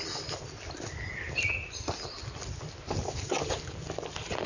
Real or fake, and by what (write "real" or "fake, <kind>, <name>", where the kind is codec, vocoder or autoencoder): real